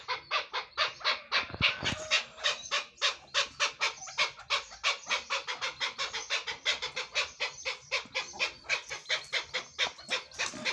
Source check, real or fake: real